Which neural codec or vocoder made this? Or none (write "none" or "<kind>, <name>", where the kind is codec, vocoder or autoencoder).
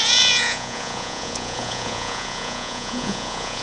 vocoder, Vocos